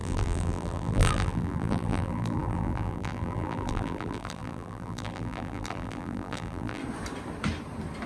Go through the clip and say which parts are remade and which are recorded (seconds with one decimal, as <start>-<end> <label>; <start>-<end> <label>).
0.0-6.8 remade; 6.8-8.1 recorded